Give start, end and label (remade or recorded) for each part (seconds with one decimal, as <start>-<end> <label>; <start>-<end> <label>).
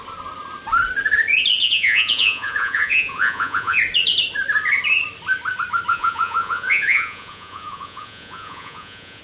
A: 0.0-1.6 recorded; 1.6-3.8 remade; 3.8-5.9 recorded; 5.9-9.2 remade